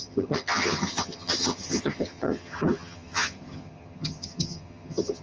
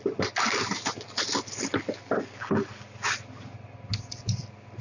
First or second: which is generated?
first